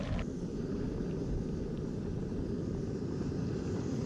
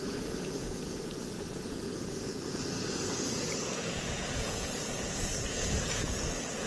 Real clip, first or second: first